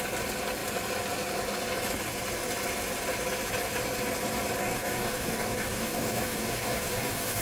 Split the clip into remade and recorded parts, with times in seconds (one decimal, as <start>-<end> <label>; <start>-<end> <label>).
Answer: 0.0-4.6 recorded; 4.6-7.4 remade